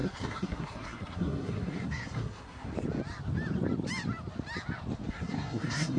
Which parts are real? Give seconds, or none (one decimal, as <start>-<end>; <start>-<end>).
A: 2.7-5.1